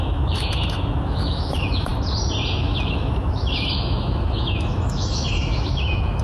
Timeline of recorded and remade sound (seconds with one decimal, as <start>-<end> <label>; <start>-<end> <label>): 0.0-1.9 remade; 1.9-2.6 recorded; 2.6-6.2 remade